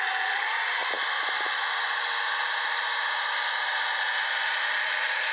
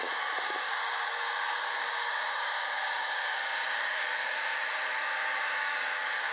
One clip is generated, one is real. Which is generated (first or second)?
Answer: second